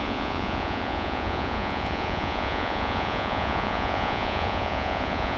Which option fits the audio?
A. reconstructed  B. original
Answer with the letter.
A